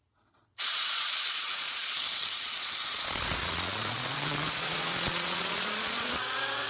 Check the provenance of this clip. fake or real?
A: fake